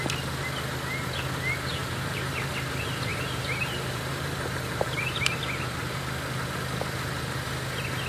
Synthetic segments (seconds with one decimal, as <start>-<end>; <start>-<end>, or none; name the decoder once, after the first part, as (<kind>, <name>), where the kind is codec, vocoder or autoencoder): 1.8-2.5 (vocoder, BigVGAN v2); 3.1-6.0